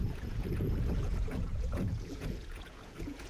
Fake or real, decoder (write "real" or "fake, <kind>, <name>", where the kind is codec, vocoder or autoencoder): fake, vocoder, Vocos